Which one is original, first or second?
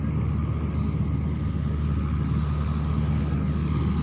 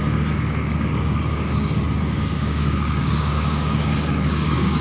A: first